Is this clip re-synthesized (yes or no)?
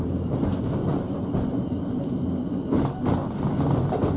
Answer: no